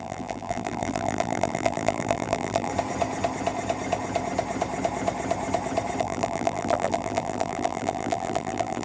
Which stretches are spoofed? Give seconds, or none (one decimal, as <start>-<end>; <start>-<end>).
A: 0.0-2.7; 6.0-8.8